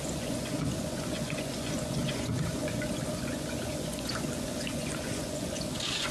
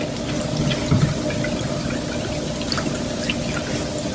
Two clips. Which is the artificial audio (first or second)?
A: first